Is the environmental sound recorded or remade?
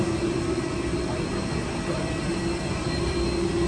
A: recorded